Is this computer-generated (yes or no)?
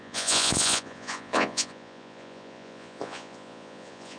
yes